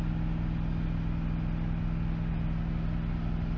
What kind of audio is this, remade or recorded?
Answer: recorded